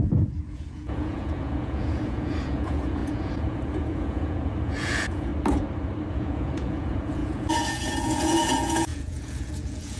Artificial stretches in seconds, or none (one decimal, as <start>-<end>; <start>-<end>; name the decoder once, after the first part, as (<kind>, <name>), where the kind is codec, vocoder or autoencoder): 0.0-5.3 (vocoder, Vocos); 6.1-10.0